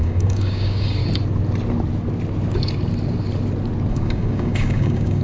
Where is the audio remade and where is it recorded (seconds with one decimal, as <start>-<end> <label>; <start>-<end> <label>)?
0.0-1.0 remade; 1.0-3.9 recorded; 3.9-5.2 remade